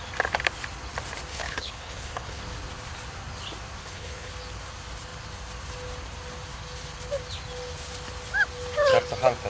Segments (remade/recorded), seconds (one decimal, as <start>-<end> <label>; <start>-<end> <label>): 0.0-1.3 recorded; 1.3-2.4 remade; 2.4-3.8 recorded; 3.8-4.3 remade; 4.3-9.5 recorded